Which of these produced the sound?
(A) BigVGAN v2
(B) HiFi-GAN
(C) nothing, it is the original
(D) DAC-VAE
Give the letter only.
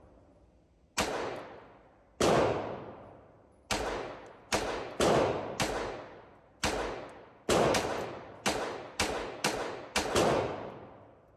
C